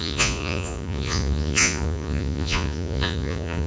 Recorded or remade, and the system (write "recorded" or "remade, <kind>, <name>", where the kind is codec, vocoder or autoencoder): remade, vocoder, Vocos